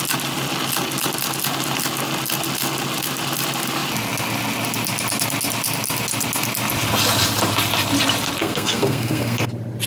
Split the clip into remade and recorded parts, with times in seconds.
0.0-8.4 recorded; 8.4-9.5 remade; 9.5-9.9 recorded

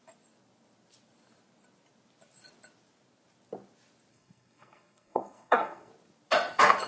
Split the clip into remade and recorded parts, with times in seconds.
0.0-4.1 recorded; 4.1-5.9 remade; 5.9-6.9 recorded

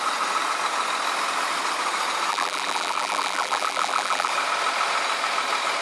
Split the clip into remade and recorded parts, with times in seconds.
0.0-2.3 recorded; 2.3-4.3 remade; 4.3-5.8 recorded